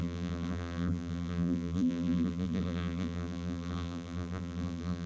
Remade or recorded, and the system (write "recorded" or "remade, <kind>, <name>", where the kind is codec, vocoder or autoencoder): remade, vocoder, BigVGAN v2